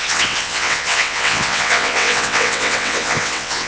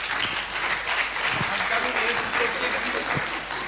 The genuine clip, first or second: second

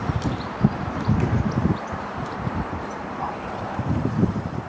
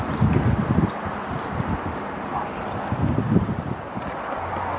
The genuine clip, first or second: second